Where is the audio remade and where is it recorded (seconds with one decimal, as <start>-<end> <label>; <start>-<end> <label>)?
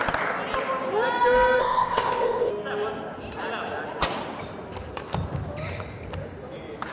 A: 0.0-1.6 recorded; 1.6-2.5 remade; 2.5-6.9 recorded